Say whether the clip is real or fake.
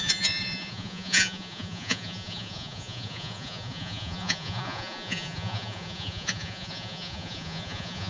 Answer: fake